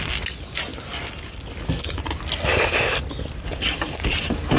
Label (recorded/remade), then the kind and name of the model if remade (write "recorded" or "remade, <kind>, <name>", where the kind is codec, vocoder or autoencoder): recorded